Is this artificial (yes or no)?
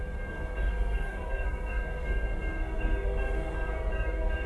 yes